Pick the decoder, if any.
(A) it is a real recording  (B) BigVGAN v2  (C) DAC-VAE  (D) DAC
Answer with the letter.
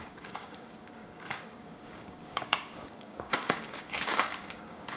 D